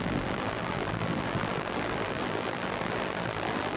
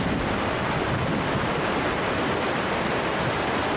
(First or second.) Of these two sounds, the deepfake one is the first